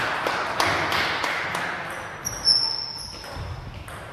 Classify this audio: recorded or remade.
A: recorded